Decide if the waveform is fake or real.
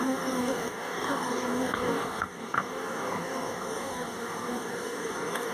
fake